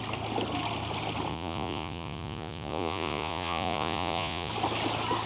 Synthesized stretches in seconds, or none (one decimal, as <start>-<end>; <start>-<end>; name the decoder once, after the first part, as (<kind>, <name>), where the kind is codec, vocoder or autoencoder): 1.3-4.5 (vocoder, Vocos)